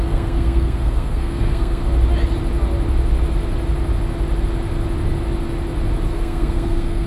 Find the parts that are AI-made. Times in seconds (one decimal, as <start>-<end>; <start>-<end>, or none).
0.0-1.8; 6.1-7.1